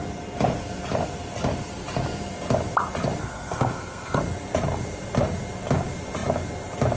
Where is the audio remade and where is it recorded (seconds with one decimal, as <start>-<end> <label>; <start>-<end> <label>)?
0.0-3.2 recorded; 3.2-4.2 remade; 4.2-7.0 recorded